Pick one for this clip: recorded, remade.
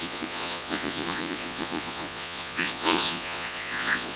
remade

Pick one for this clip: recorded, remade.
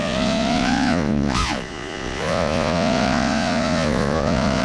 remade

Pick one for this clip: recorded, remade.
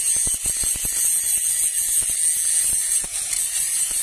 recorded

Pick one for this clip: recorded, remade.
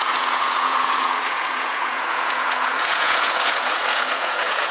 remade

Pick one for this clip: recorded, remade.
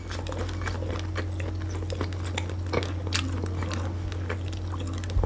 recorded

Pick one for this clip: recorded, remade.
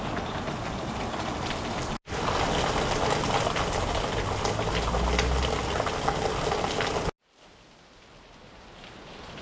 recorded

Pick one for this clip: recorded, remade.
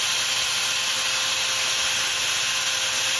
recorded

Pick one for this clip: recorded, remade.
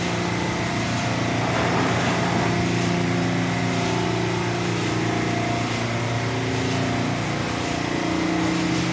recorded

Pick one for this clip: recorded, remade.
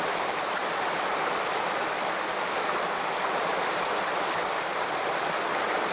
recorded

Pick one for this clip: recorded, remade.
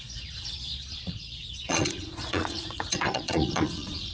remade